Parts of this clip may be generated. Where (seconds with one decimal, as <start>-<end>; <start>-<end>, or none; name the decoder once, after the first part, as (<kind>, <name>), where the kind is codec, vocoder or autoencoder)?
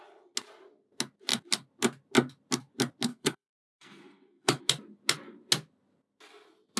3.1-4.6 (codec, SNAC)